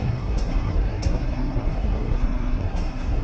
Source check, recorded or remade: remade